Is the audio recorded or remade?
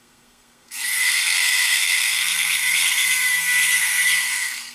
remade